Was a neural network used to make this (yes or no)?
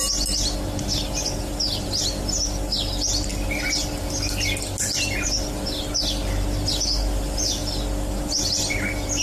no